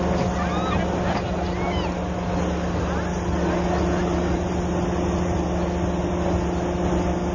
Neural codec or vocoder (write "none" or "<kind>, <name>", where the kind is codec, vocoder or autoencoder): none